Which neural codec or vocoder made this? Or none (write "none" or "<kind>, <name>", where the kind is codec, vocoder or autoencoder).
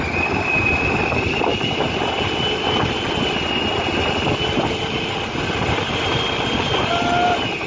none